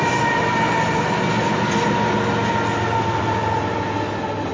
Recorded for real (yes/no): yes